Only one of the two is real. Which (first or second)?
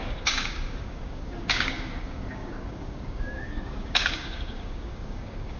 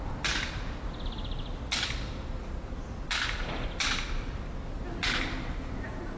second